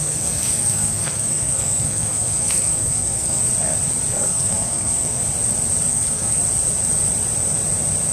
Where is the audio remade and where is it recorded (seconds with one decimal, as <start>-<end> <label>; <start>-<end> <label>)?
0.0-3.4 remade; 3.4-4.1 recorded; 4.1-5.2 remade; 5.2-5.9 recorded; 5.9-6.4 remade; 6.4-8.1 recorded